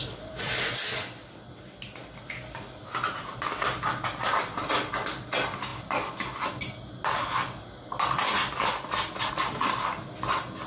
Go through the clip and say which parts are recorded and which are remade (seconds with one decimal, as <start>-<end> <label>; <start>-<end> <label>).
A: 0.0-10.7 recorded